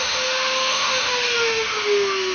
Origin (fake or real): fake